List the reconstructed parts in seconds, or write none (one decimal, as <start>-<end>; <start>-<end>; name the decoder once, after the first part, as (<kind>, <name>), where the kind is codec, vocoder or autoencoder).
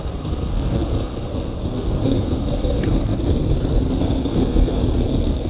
0.0-5.5 (codec, SNAC)